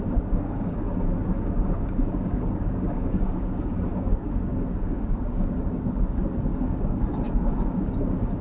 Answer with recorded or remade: remade